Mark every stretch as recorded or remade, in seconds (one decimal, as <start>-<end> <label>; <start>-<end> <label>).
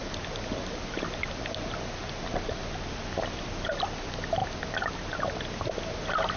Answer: 0.0-6.4 recorded